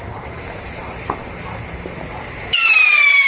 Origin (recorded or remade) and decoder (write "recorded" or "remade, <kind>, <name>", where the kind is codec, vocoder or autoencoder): remade, vocoder, BigVGAN v2